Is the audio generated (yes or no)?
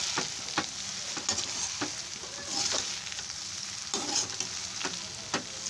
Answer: no